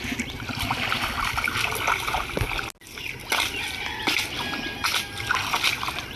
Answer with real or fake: real